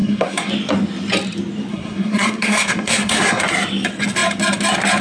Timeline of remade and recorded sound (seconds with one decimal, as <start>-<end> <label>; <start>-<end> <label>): 0.0-0.5 remade; 0.5-1.7 recorded; 1.7-3.4 remade; 3.4-5.0 recorded